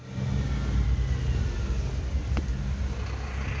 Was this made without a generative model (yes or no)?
yes